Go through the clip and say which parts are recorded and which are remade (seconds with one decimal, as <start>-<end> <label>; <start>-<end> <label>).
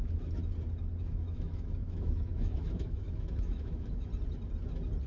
0.0-0.4 remade; 0.4-1.0 recorded; 1.0-4.1 remade; 4.1-5.1 recorded